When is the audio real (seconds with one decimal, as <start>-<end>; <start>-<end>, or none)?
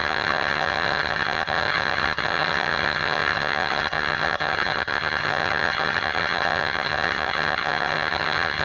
none